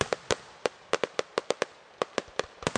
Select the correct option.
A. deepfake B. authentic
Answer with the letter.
A